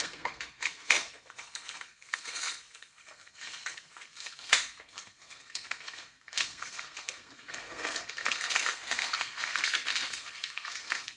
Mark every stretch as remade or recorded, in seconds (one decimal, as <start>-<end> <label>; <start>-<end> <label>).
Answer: 0.0-11.2 remade